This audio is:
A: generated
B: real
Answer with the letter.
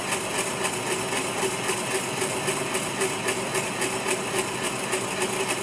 B